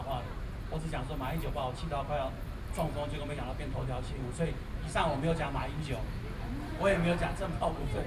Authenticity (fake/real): real